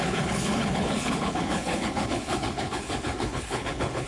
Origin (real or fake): fake